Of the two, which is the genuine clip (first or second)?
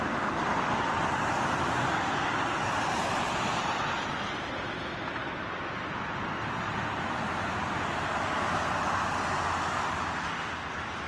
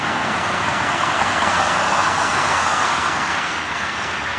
first